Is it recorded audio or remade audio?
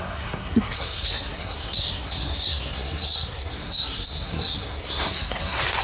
remade